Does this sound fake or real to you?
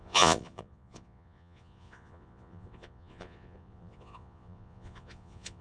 fake